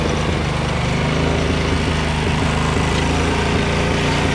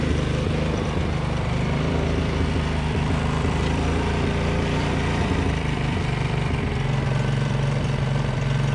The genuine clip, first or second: first